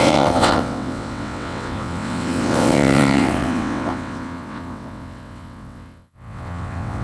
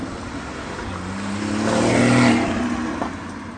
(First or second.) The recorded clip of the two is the second